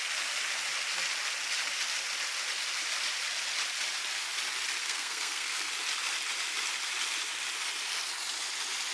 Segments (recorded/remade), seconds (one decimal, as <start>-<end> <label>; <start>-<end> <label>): 0.0-4.8 recorded; 4.8-5.7 remade; 5.7-8.9 recorded